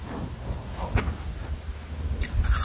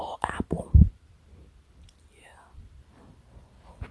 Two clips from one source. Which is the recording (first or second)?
first